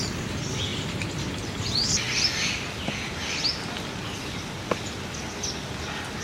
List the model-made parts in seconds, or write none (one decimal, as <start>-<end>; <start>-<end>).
none